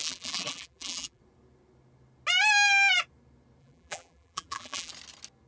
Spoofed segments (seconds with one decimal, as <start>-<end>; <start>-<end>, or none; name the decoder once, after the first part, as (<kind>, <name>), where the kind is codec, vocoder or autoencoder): 0.0-1.2 (vocoder, BigVGAN v2); 3.6-4.9